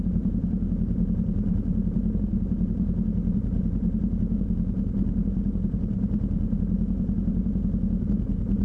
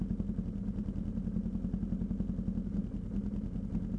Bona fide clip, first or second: second